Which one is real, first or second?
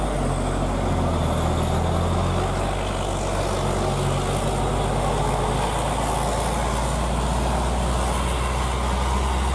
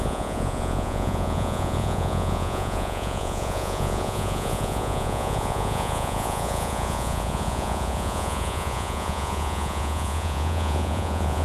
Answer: first